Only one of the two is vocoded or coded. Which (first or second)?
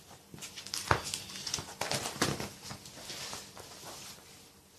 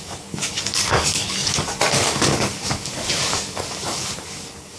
second